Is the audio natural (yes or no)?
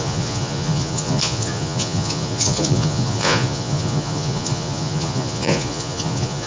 no